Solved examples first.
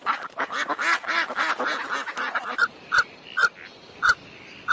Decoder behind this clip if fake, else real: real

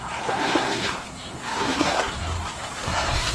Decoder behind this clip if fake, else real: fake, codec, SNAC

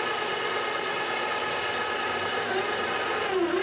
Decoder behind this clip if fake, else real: real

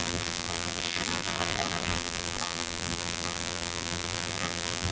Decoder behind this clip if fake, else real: fake, vocoder, BigVGAN v2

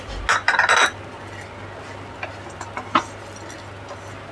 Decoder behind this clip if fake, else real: real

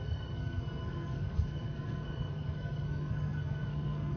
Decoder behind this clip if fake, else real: fake, codec, SNAC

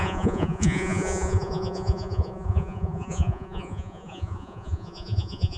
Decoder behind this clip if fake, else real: fake, vocoder, Vocos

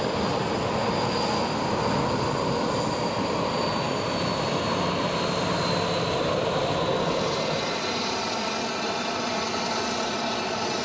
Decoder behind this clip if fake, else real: real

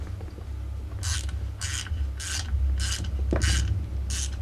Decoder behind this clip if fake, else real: real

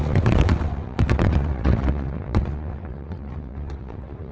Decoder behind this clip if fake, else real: fake, vocoder, WaveNeXt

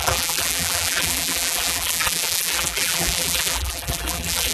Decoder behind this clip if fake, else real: fake, vocoder, BigVGAN v2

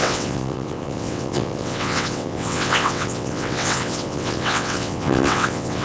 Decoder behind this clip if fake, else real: fake, vocoder, WaveNeXt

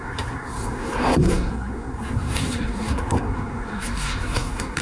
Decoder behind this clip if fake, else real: fake, codec, SNAC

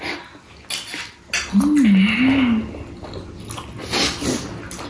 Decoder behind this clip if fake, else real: real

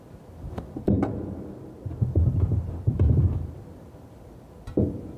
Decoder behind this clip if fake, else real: fake, vocoder, BigVGAN v2